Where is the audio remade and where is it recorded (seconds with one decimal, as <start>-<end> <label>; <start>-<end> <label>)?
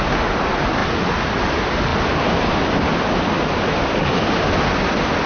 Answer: 0.0-5.3 recorded